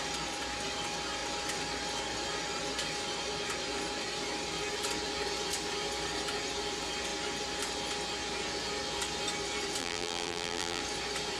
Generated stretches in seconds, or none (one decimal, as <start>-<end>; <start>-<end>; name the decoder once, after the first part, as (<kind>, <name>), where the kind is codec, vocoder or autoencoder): 9.8-10.8 (vocoder, BigVGAN v2)